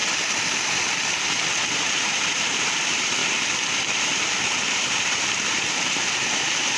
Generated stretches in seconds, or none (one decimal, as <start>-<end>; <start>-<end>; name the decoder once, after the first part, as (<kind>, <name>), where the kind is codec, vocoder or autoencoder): 1.8-3.2 (vocoder, BigVGAN v2); 4.0-6.8